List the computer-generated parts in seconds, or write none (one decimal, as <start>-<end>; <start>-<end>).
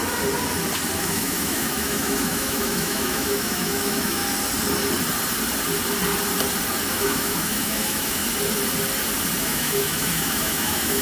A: 1.0-4.2; 6.9-8.2; 9.4-11.0